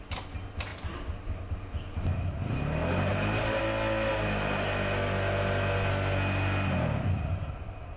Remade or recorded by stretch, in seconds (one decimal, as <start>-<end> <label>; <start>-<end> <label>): 0.0-0.7 recorded; 0.7-2.2 remade; 2.2-3.1 recorded; 3.1-3.6 remade; 3.6-8.0 recorded